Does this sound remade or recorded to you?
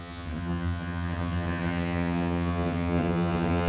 remade